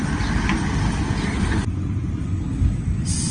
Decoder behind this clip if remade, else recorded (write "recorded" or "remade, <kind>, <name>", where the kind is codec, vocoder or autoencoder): recorded